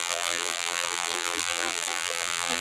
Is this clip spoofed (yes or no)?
yes